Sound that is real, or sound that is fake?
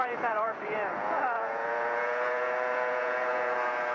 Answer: fake